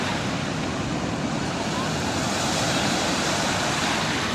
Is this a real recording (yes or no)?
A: yes